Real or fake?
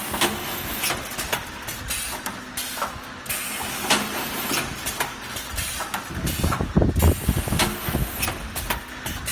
real